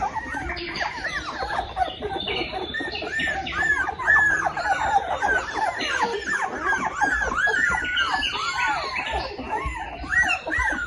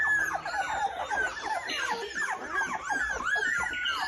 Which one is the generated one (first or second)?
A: first